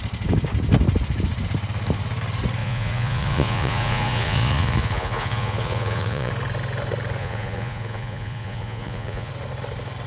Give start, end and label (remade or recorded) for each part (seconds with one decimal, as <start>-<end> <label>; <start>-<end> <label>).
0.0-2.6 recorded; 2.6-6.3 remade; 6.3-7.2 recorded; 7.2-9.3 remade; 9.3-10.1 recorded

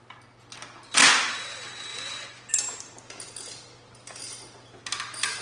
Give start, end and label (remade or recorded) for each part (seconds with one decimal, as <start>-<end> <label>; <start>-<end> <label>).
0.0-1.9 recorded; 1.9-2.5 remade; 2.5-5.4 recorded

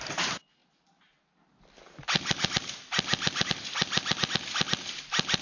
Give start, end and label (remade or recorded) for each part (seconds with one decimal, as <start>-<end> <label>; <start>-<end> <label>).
0.0-5.4 recorded